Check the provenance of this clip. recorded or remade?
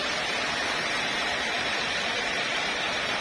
remade